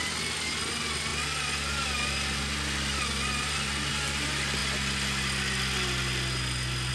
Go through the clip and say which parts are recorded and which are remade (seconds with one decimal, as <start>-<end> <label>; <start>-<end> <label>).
0.0-6.9 recorded